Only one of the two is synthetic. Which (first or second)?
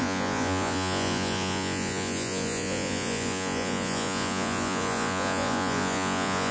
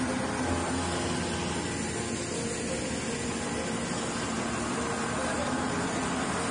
first